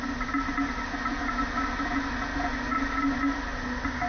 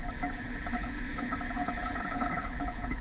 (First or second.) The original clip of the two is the first